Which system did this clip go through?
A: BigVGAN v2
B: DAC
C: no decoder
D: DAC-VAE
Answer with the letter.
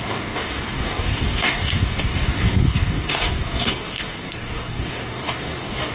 B